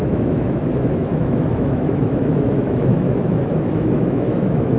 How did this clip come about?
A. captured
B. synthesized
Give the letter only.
B